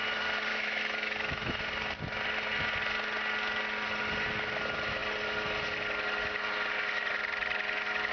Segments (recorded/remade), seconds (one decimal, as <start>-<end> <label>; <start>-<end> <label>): 0.0-0.5 recorded; 0.5-1.6 remade; 1.6-8.1 recorded